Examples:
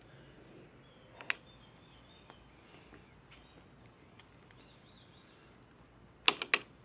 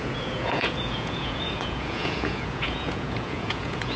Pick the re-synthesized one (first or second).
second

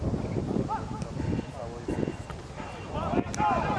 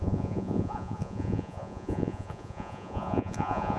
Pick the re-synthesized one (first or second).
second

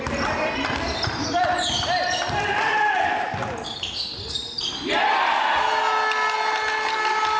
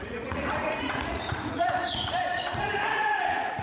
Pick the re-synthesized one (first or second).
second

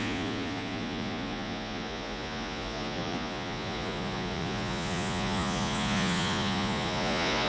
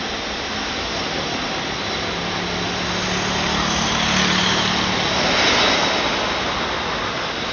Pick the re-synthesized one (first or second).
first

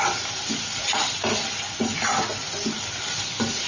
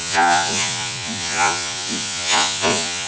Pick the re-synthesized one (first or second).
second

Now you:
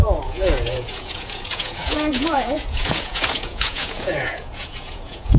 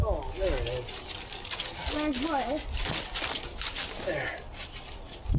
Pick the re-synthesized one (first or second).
first